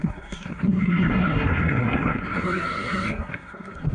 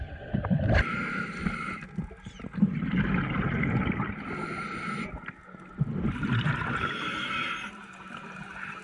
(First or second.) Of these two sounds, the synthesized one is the first